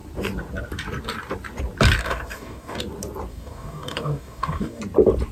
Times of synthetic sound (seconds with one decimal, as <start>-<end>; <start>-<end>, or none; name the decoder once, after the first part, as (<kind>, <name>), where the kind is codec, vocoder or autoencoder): 2.0-2.8 (codec, DAC); 3.3-4.8